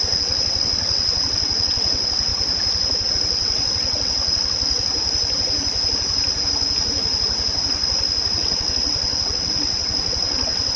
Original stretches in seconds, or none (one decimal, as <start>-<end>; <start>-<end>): 2.3-3.1; 4.9-8.3